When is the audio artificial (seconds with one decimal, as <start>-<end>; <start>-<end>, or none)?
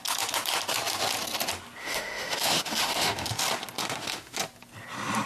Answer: 1.8-3.4; 3.8-4.4